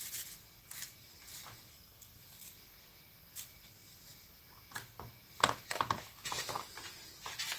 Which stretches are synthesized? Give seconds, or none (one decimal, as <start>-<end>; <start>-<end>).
1.7-2.2

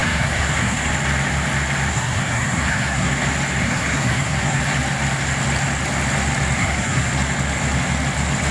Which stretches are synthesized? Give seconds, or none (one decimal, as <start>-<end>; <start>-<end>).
0.0-0.9; 1.9-3.1; 3.6-4.6; 6.6-7.1

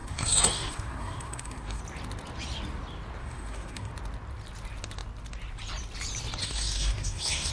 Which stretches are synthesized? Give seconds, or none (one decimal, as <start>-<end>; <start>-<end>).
0.0-1.8; 3.2-3.9; 6.4-7.5